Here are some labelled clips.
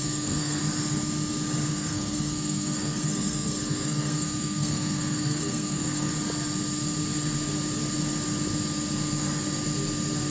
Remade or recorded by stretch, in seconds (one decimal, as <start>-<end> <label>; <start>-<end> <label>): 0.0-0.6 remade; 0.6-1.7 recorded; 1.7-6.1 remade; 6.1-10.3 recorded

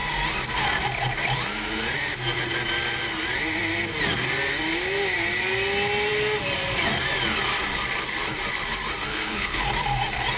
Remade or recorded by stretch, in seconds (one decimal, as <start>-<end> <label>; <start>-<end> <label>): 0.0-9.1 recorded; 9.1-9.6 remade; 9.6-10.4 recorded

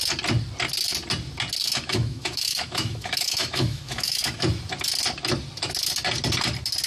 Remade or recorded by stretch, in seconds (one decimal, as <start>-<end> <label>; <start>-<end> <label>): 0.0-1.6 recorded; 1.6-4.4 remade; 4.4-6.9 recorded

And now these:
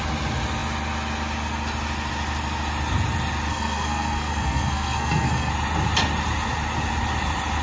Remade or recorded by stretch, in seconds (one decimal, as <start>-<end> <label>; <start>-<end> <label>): 0.0-3.5 recorded; 3.5-5.5 remade; 5.5-7.6 recorded

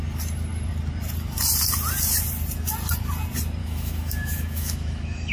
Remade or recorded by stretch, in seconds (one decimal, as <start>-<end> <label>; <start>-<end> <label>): 0.0-3.6 recorded; 3.6-5.3 remade

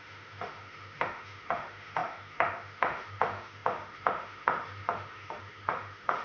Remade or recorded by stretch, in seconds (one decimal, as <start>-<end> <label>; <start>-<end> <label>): 0.0-6.2 remade

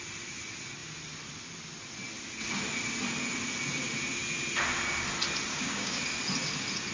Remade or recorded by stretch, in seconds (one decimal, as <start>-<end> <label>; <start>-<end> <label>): 0.0-5.5 recorded; 5.5-6.0 remade; 6.0-6.9 recorded

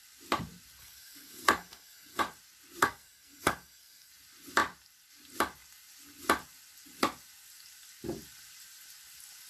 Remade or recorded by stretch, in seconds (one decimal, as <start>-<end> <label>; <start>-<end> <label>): 0.0-0.8 recorded; 0.8-2.2 remade; 2.2-2.8 recorded; 2.8-4.1 remade; 4.1-9.5 recorded